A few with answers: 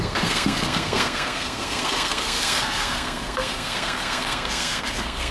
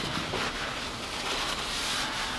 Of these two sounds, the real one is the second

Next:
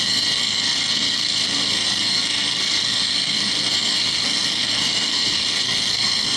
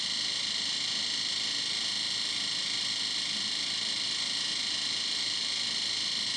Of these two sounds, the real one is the second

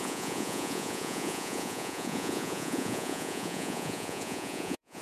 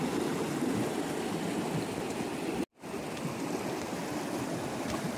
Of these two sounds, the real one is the second